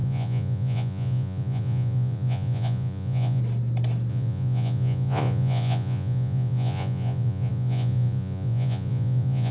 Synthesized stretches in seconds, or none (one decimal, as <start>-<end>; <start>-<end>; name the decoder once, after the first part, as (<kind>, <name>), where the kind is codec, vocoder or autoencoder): 0.0-3.4 (vocoder, Vocos); 4.1-9.5